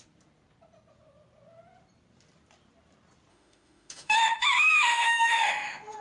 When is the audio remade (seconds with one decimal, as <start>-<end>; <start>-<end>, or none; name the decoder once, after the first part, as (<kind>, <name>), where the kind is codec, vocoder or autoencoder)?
3.3-6.0 (autoencoder, DAC-VAE)